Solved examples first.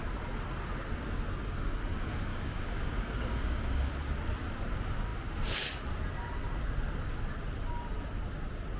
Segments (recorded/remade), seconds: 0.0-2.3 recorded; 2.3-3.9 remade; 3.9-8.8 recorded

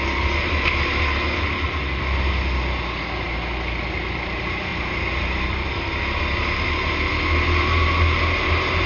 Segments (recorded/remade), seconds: 0.0-8.9 recorded

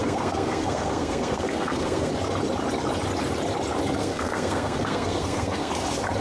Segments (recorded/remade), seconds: 0.0-2.1 remade; 2.1-4.0 recorded; 4.0-5.7 remade; 5.7-6.2 recorded

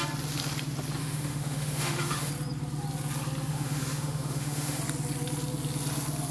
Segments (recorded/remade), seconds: 0.0-1.0 recorded; 1.0-2.3 remade; 2.3-3.5 recorded; 3.5-4.8 remade; 4.8-6.3 recorded